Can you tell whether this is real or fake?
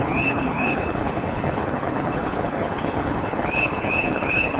fake